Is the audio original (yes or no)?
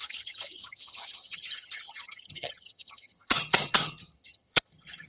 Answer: no